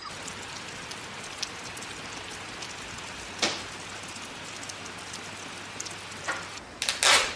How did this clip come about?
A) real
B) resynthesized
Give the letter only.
A